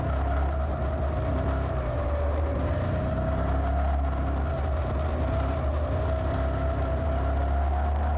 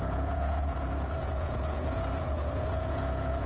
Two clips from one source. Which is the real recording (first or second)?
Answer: first